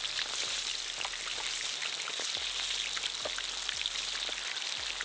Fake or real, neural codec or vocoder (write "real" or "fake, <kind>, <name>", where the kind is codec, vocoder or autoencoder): real